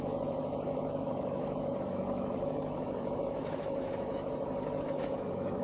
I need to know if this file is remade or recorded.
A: remade